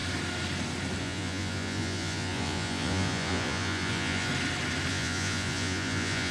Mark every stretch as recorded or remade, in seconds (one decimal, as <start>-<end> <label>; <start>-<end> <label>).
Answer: 0.0-1.0 recorded; 1.0-4.3 remade; 4.3-4.9 recorded; 4.9-6.3 remade